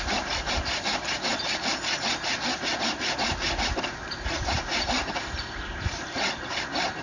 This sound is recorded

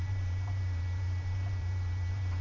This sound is remade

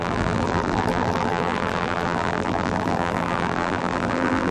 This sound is remade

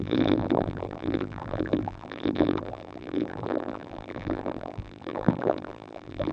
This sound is remade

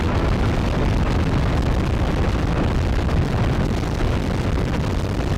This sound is recorded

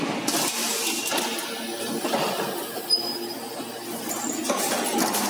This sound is recorded